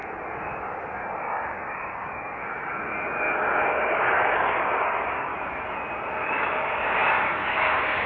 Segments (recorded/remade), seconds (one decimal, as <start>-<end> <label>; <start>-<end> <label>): 0.0-1.2 recorded; 1.2-2.4 remade; 2.4-3.7 recorded; 3.7-5.3 remade; 5.3-6.1 recorded; 6.1-8.1 remade